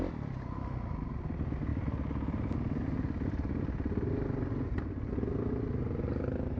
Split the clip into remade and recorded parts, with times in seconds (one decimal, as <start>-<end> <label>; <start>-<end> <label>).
0.0-6.6 recorded